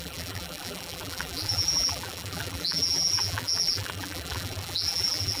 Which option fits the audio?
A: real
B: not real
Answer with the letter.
B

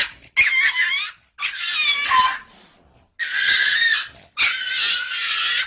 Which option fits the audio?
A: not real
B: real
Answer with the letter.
B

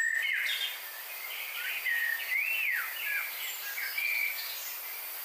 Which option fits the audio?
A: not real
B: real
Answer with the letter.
B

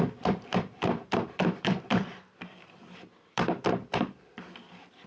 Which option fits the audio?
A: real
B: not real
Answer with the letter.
B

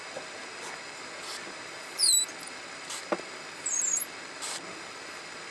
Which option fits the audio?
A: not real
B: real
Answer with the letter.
B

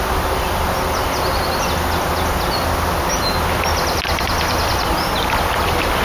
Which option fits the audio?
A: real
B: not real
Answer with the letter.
A